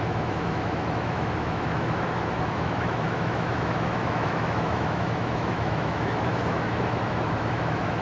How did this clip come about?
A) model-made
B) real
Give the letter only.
A